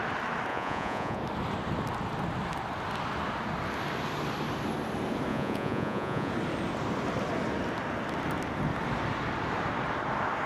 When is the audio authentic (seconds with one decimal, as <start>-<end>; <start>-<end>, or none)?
0.0-0.5; 1.2-5.3; 6.3-10.5